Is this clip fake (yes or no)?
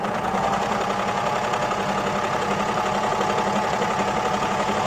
yes